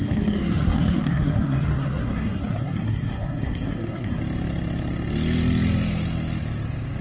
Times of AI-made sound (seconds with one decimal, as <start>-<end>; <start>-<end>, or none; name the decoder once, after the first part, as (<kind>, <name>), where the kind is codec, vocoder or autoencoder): 0.0-4.2 (codec, SNAC)